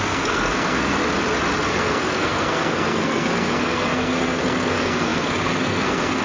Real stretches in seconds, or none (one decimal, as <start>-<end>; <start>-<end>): 1.0-1.7